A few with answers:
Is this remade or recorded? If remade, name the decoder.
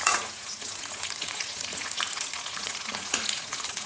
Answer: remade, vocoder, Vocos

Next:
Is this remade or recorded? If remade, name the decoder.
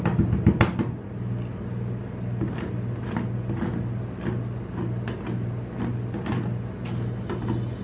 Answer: recorded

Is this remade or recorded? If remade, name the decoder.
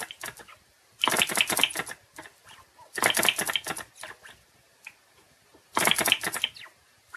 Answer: recorded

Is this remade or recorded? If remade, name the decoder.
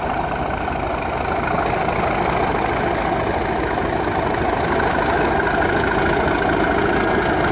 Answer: recorded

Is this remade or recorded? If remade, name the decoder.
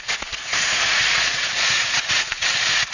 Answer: remade, vocoder, Vocos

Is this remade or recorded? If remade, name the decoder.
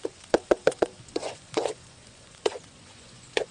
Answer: remade, vocoder, Vocos